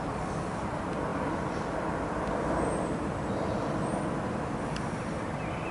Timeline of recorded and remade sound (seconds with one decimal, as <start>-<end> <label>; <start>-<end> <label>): 0.0-5.7 recorded